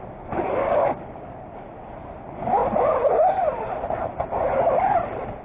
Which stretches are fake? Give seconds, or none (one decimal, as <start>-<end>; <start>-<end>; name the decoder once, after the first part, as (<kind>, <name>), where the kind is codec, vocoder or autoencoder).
0.6-1.5 (codec, DAC)